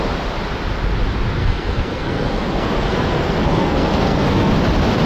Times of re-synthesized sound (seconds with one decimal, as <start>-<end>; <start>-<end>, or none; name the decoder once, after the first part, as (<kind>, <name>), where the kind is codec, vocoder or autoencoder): 1.4-4.5 (codec, SNAC)